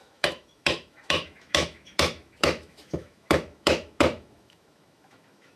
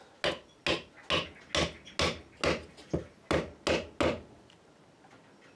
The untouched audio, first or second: second